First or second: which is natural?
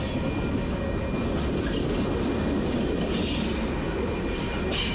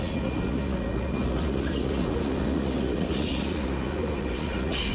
first